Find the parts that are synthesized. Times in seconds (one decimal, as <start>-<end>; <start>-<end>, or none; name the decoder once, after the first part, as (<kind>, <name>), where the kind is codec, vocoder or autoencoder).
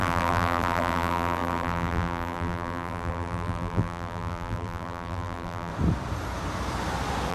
0.0-5.7 (vocoder, BigVGAN v2)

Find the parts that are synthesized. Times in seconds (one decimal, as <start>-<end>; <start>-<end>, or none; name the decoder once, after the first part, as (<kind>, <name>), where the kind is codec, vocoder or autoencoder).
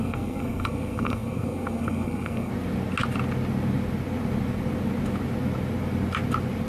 0.0-2.5 (codec, SNAC)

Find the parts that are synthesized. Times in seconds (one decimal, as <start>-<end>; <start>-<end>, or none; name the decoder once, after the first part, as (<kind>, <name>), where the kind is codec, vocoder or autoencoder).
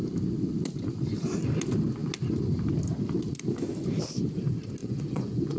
4.8-5.6 (vocoder, Vocos)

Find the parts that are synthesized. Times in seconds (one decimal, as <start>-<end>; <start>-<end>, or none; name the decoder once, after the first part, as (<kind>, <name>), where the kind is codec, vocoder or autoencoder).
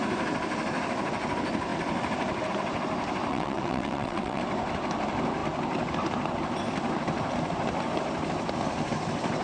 3.3-4.4 (vocoder, WaveNeXt)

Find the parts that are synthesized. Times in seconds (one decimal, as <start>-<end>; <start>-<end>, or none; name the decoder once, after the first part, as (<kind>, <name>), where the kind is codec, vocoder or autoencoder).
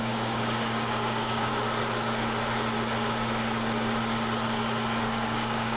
0.0-1.5 (codec, DAC); 5.0-5.8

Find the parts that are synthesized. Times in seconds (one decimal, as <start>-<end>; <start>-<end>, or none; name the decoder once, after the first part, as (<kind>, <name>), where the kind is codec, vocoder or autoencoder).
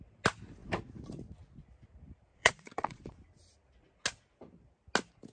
2.3-3.1 (vocoder, Vocos)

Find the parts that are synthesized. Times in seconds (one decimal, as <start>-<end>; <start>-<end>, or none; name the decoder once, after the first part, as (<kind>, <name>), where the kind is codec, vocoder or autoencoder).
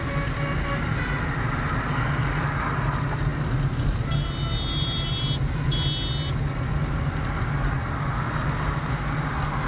none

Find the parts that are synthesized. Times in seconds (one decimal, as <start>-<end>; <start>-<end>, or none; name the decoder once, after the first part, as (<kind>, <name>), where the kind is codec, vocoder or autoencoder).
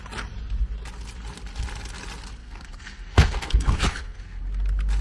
2.4-4.4 (codec, SNAC)